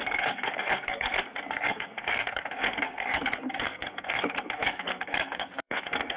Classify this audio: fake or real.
fake